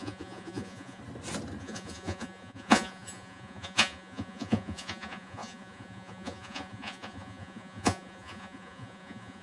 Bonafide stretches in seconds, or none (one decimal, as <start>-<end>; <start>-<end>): 1.0-1.6